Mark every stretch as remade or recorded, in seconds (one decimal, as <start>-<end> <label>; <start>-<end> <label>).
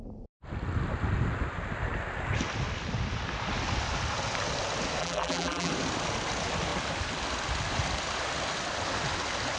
0.0-5.0 recorded; 5.0-5.7 remade; 5.7-9.6 recorded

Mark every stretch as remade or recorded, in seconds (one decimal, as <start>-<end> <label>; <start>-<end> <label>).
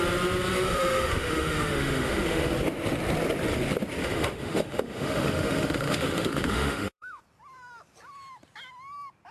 0.0-0.5 recorded; 0.5-2.5 remade; 2.5-4.0 recorded; 4.0-7.2 remade; 7.2-9.3 recorded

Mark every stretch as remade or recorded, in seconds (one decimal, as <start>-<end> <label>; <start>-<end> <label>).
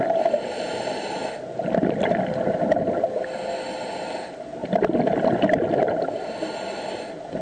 0.0-7.4 recorded